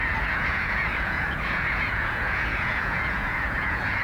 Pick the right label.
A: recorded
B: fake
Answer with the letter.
B